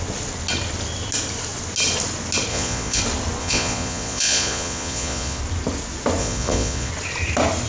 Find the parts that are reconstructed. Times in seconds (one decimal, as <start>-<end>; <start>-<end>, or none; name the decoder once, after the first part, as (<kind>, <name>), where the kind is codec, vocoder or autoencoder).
2.5-3.0 (vocoder, Vocos); 3.4-5.4; 6.2-6.9